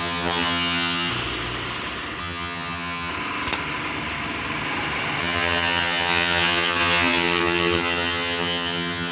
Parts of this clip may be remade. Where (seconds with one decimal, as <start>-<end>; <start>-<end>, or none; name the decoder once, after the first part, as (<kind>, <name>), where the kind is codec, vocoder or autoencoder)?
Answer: 0.0-1.1 (vocoder, HiFi-GAN); 2.2-3.1; 5.2-9.1